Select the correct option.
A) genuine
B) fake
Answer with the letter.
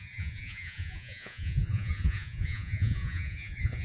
B